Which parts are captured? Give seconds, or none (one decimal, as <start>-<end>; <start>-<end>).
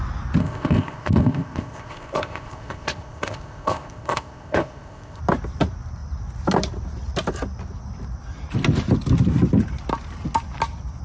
0.0-0.4; 5.2-11.0